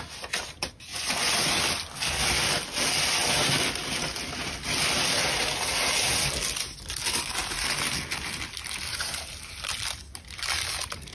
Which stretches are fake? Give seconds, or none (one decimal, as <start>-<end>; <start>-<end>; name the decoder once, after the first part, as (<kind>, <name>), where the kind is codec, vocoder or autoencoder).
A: 0.9-1.5 (vocoder, Vocos)